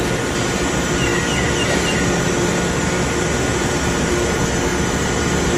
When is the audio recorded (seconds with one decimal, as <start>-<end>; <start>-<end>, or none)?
0.0-5.6